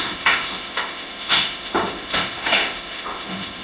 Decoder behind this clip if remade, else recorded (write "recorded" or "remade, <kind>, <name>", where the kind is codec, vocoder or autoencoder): remade, autoencoder, DAC-VAE